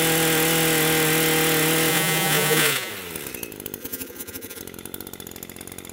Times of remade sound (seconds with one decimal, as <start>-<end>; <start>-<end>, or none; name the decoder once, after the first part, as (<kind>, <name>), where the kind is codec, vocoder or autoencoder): 1.9-2.9 (vocoder, Vocos); 3.8-4.6